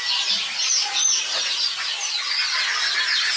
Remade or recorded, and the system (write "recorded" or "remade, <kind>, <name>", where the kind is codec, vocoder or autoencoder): recorded